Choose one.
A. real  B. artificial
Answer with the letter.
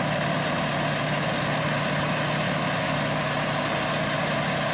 A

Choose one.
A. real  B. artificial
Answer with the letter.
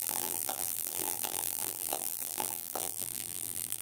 B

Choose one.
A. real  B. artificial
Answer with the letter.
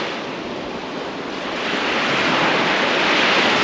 A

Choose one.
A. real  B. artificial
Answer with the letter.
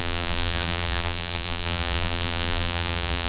B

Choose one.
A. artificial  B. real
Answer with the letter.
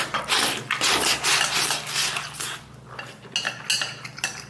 B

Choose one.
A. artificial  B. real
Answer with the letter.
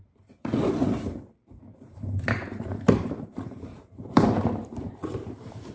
A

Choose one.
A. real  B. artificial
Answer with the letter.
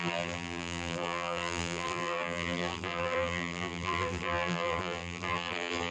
B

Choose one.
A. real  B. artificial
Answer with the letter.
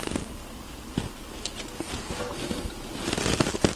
A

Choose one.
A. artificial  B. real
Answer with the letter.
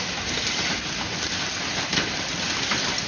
B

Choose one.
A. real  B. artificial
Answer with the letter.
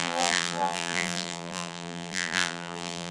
B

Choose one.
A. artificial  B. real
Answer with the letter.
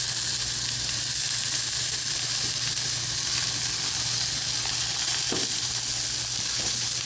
B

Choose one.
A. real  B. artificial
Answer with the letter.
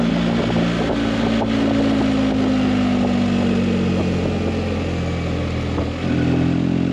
A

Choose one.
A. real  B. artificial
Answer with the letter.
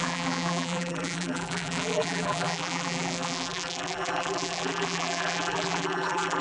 B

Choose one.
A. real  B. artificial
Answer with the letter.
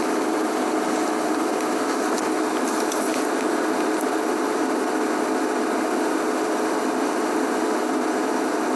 A